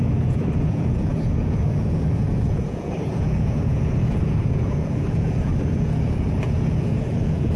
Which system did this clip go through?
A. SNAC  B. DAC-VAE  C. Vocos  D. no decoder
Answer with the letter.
C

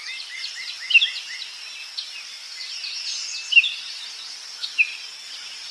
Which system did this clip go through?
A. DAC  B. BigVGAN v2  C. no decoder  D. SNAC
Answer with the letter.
C